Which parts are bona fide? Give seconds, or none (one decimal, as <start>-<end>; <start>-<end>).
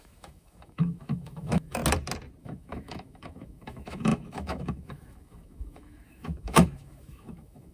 1.8-2.4